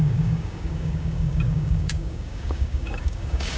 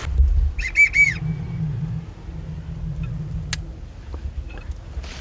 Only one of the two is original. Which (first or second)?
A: second